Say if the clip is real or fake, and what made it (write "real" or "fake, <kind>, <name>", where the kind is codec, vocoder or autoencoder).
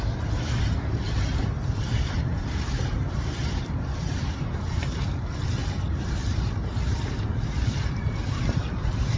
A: fake, vocoder, BigVGAN v2